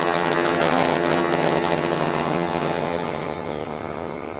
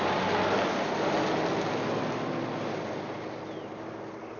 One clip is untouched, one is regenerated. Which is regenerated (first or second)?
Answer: first